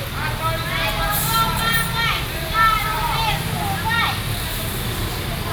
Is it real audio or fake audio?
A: real